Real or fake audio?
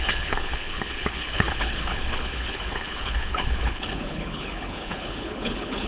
fake